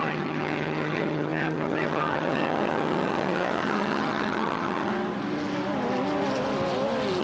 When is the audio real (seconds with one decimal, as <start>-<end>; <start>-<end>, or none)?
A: 4.9-7.2